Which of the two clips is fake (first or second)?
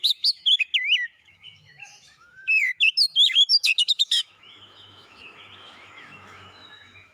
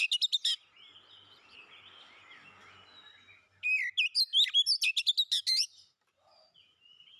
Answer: first